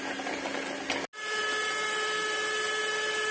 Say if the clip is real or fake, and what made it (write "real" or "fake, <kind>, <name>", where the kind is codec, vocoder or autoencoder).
real